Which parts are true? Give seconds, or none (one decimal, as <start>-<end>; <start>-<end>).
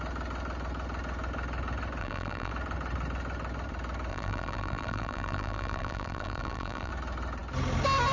0.0-2.0; 2.5-4.1; 6.9-8.1